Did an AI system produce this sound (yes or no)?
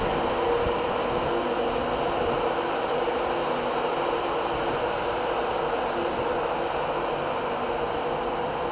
no